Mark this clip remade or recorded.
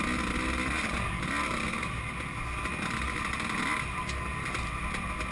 recorded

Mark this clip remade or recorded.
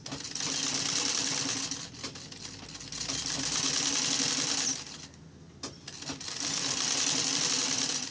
recorded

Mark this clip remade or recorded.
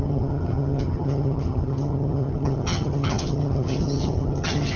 remade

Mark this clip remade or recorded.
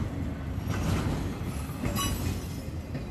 recorded